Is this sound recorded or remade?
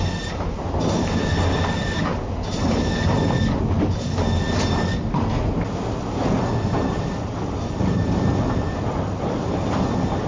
recorded